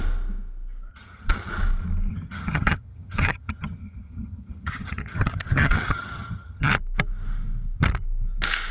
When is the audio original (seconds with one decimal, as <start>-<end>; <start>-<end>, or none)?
0.0-0.9; 1.5-2.1; 6.7-8.7